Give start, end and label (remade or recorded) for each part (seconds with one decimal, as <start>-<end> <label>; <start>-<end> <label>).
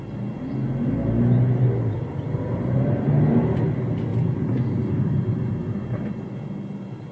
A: 0.0-7.1 recorded